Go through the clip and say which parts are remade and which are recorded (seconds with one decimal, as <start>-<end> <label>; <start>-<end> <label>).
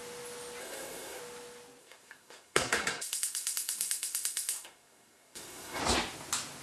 0.0-0.6 recorded; 0.6-1.2 remade; 1.2-1.8 recorded; 1.8-5.8 remade; 5.8-6.6 recorded